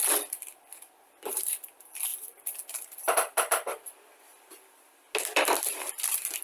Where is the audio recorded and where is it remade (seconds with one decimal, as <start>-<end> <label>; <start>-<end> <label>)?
0.0-6.4 recorded